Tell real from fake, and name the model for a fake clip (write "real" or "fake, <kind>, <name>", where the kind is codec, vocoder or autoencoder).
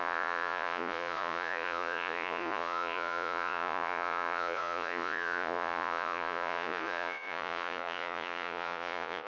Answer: fake, vocoder, Vocos